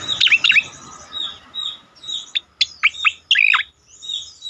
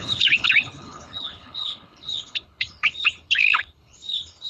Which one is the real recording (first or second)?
first